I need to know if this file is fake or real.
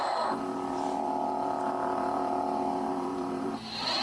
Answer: fake